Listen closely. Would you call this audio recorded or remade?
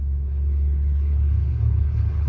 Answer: remade